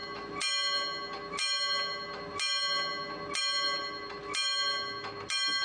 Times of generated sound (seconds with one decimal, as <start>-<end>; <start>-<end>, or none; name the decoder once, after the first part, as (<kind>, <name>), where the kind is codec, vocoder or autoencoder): none